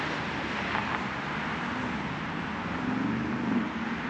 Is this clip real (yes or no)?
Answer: yes